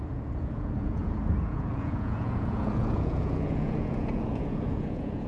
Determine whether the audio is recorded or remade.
remade